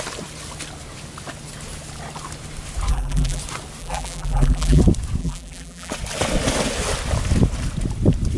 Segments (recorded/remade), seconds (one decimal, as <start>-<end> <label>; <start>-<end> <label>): 0.0-2.9 recorded; 2.9-3.4 remade; 3.4-3.8 recorded; 3.8-4.8 remade; 4.8-5.2 recorded; 5.2-5.9 remade; 5.9-8.4 recorded